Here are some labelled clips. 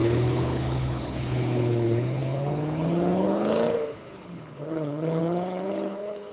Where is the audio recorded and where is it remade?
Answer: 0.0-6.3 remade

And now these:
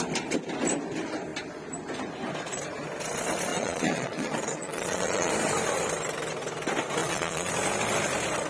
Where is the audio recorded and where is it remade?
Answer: 0.0-3.5 recorded; 3.5-5.3 remade; 5.3-7.0 recorded; 7.0-7.5 remade; 7.5-8.5 recorded

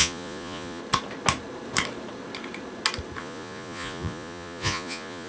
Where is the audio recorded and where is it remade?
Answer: 0.0-0.8 remade; 0.8-3.2 recorded; 3.2-5.3 remade

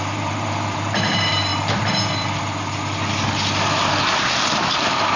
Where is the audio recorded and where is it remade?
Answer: 0.0-1.5 remade; 1.5-4.1 recorded; 4.1-5.2 remade

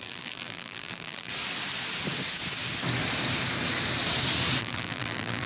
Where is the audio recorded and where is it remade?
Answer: 0.0-1.3 remade; 1.3-4.6 recorded; 4.6-5.5 remade